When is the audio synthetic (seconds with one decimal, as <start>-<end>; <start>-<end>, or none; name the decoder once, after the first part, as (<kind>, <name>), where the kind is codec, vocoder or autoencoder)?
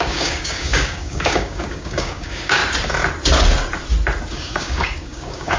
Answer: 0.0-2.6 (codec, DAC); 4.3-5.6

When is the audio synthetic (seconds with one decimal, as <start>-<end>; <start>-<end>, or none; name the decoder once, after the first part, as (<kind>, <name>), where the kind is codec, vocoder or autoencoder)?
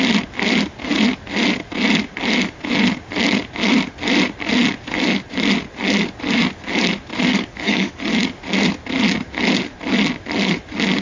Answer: 7.3-8.0 (codec, DAC)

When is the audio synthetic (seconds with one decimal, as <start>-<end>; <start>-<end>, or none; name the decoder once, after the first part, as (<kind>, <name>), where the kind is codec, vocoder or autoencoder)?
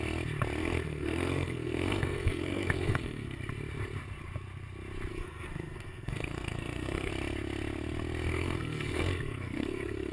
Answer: 0.6-3.4 (codec, SNAC); 5.1-7.1; 8.3-10.1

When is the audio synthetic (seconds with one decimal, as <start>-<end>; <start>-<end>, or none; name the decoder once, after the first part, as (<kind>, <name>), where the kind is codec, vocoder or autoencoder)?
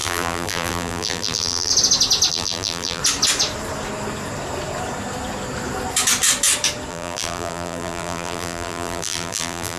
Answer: 0.0-1.7 (vocoder, BigVGAN v2); 2.3-3.0; 6.9-9.8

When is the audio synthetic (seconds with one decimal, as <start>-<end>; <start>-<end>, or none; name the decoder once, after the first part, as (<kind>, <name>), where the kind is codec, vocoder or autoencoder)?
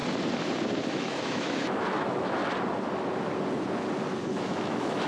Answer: 0.9-2.4 (autoencoder, DAC-VAE); 4.4-5.1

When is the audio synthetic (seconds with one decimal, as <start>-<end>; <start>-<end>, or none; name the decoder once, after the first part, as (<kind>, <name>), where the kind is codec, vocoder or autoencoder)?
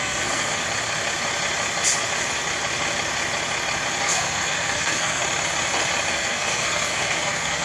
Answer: 0.0-0.6 (codec, SNAC); 4.0-5.2; 6.1-7.6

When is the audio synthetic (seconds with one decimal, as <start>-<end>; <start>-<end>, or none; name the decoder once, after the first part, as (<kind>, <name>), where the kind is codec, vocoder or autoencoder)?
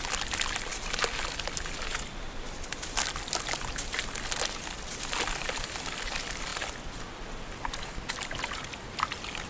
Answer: none